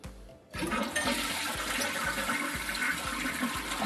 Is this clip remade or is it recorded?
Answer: recorded